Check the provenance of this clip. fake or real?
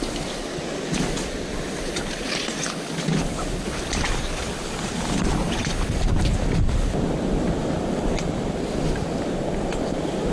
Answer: real